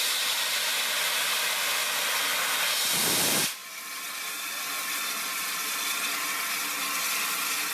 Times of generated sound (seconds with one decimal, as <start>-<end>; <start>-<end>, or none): none